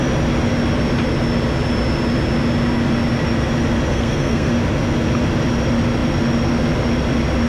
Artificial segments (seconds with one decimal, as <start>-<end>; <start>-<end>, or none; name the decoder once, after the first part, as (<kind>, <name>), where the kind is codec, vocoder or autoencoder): 3.9-4.5 (codec, SNAC)